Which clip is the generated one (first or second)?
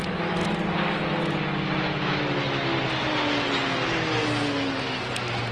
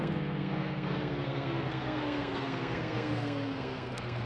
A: second